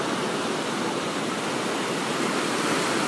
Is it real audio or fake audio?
real